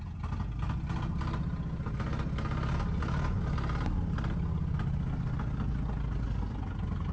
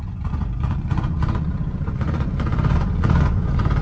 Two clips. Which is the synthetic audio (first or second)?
second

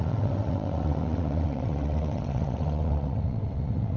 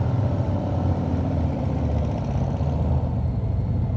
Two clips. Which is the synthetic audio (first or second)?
first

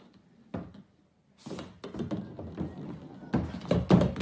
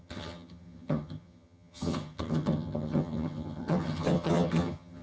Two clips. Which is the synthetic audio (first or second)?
second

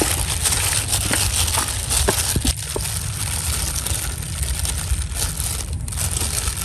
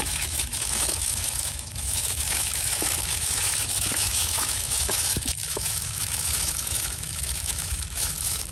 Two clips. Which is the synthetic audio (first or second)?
second